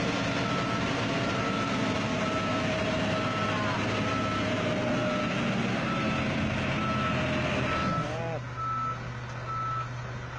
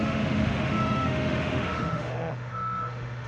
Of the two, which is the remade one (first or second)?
second